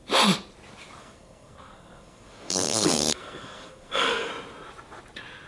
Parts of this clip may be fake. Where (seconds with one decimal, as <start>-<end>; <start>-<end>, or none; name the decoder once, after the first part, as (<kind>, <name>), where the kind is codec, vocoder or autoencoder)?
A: 1.0-4.3 (codec, SNAC)

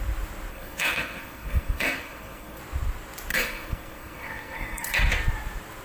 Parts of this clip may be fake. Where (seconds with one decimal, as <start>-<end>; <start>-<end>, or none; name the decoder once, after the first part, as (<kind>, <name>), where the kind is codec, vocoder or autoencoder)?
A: 0.5-2.6 (codec, SNAC); 3.3-5.0

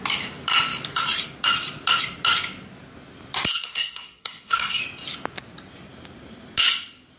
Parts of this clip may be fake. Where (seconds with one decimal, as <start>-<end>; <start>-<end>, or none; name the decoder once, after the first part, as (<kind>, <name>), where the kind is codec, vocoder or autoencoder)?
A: 3.5-4.8 (codec, SNAC)

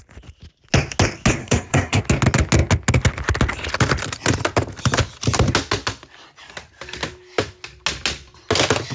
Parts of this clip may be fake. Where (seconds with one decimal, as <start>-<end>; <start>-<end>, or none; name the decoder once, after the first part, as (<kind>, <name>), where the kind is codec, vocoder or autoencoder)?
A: 1.4-2.0 (codec, SNAC)

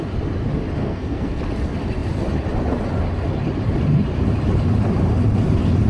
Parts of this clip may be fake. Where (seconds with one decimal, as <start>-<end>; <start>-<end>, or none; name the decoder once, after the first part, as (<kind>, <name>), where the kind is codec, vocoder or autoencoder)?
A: 0.8-1.4 (codec, SNAC)